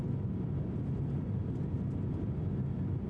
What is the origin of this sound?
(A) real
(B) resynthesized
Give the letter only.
A